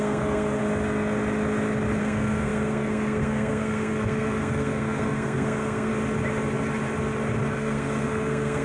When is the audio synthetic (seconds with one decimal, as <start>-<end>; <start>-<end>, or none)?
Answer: 0.0-0.6; 2.0-5.9; 7.5-8.6